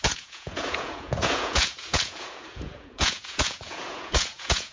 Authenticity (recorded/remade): remade